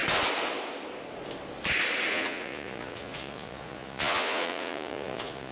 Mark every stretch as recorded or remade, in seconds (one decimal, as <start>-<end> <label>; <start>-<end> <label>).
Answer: 0.0-2.1 recorded; 2.1-5.5 remade